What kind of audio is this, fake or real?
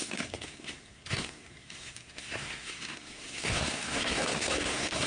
fake